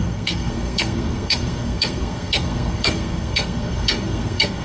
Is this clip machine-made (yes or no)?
yes